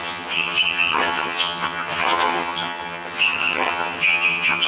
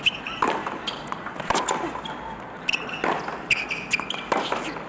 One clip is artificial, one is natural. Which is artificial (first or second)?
first